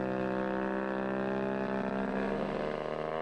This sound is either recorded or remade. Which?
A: recorded